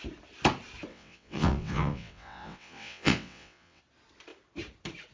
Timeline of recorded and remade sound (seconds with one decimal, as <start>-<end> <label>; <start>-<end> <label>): 0.0-0.9 recorded; 0.9-3.8 remade; 3.8-5.1 recorded